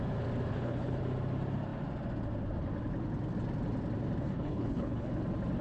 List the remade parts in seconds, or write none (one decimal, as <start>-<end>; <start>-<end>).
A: 0.5-1.0; 4.2-5.1